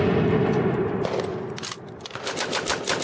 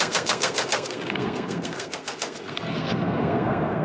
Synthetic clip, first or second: second